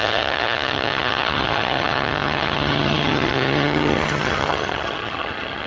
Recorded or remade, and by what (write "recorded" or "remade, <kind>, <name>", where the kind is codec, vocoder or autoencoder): remade, vocoder, HiFi-GAN